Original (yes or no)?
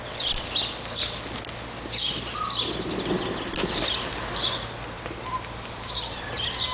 yes